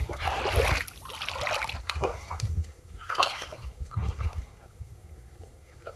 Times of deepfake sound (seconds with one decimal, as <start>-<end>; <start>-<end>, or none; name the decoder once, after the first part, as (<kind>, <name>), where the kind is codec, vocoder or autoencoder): 0.0-0.4 (codec, SNAC); 1.8-6.0